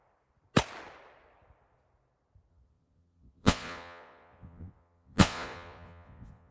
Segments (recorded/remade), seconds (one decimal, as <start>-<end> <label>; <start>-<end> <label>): 0.0-2.5 recorded; 2.5-6.5 remade